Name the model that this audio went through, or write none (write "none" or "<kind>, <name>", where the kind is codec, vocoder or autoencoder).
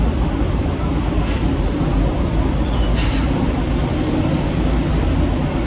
none